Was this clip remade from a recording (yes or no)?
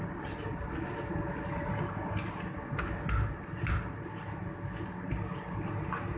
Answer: no